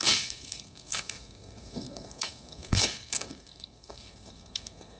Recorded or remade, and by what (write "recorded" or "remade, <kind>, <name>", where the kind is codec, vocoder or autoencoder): remade, codec, SNAC